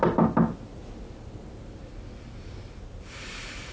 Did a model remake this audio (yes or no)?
no